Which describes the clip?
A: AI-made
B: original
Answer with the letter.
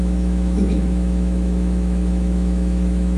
A